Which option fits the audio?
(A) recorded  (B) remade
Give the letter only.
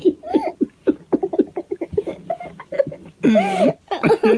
A